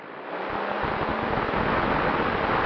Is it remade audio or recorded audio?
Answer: recorded